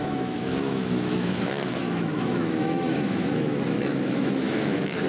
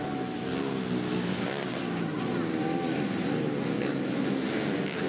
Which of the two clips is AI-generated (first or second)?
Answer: first